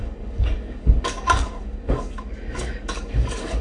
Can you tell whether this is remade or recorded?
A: remade